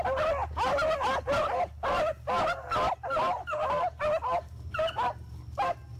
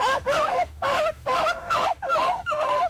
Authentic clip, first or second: first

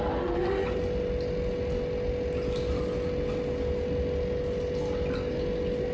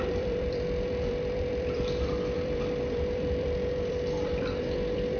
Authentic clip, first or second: first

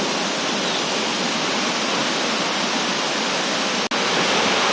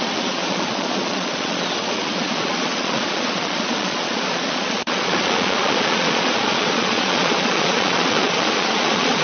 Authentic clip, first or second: first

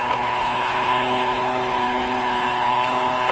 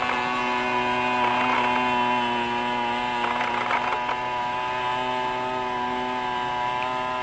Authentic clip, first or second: second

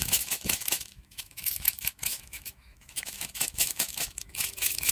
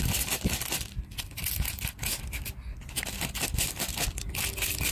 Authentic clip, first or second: second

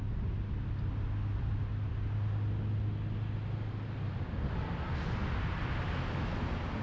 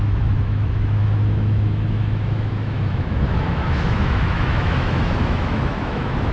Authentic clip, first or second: first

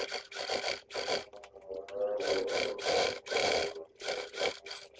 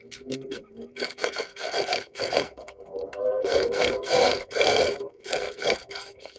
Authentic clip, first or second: first